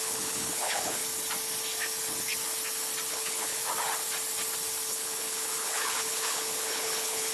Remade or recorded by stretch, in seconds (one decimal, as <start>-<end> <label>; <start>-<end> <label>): 0.0-1.0 remade; 1.0-3.1 recorded; 3.1-3.6 remade; 3.6-4.9 recorded; 4.9-7.3 remade